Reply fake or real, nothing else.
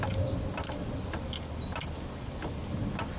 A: real